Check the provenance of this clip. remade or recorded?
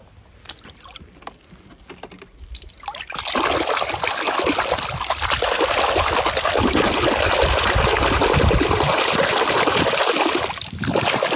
recorded